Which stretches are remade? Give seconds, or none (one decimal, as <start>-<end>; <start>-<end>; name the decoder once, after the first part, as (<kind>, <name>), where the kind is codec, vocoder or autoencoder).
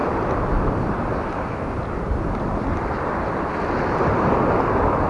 none